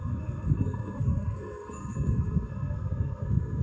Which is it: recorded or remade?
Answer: remade